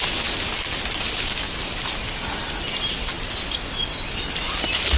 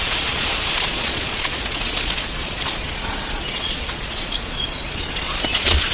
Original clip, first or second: first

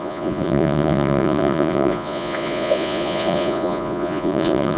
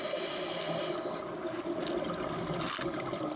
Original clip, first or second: second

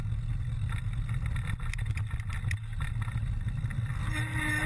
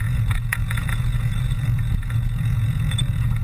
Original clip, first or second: first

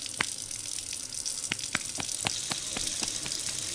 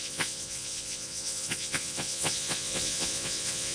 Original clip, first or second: first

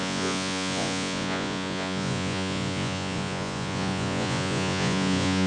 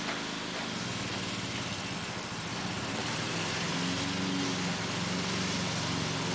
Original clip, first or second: second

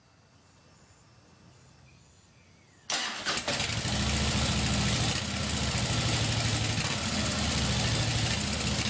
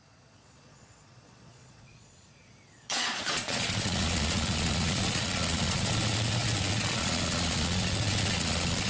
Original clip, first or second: first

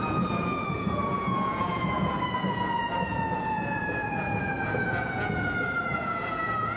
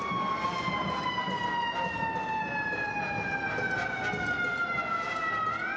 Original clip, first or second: second